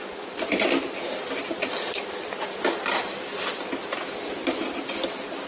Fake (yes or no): no